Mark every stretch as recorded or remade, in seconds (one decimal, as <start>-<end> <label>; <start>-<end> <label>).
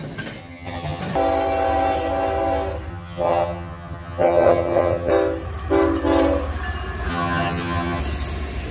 0.0-0.4 recorded; 0.4-1.0 remade; 1.0-2.9 recorded; 2.9-5.1 remade; 5.1-7.1 recorded; 7.1-8.0 remade; 8.0-8.7 recorded